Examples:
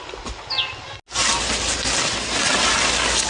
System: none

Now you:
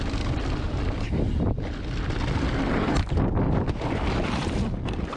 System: none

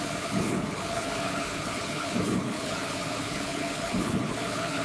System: codec, HILCodec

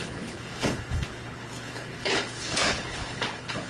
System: codec, HILCodec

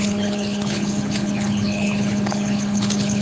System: codec, HILCodec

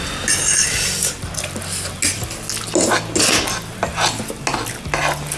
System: none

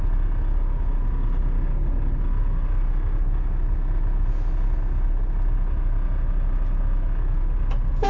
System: none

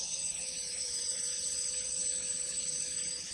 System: codec, HILCodec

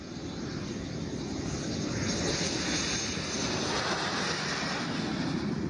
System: none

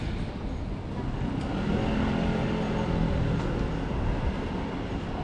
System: none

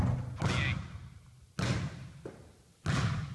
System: none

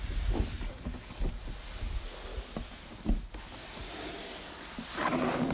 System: none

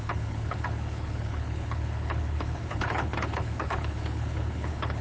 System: codec, HILCodec